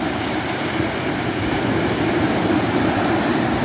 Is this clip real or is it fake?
fake